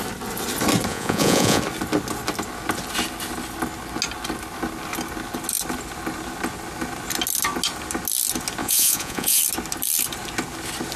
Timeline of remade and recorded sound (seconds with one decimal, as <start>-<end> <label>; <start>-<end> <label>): 0.0-0.9 recorded; 0.9-1.6 remade; 1.6-8.6 recorded; 8.6-9.4 remade; 9.4-11.0 recorded